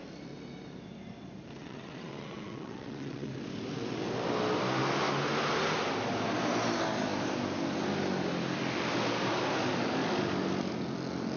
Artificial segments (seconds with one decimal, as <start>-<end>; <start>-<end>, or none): 1.6-3.3